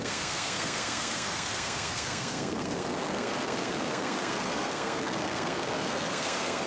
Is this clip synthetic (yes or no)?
yes